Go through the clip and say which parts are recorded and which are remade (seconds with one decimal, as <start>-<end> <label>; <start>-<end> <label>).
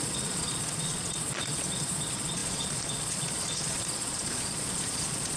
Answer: 0.0-5.4 remade